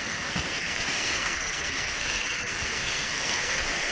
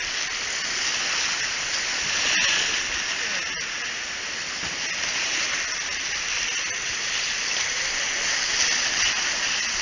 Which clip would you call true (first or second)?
second